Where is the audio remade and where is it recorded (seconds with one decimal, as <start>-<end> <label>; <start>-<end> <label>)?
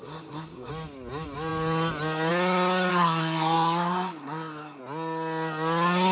0.0-0.7 remade; 0.7-2.9 recorded; 2.9-4.8 remade; 4.8-6.1 recorded